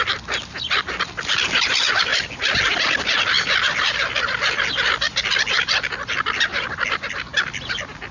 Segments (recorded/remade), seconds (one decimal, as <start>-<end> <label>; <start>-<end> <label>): 0.0-8.1 recorded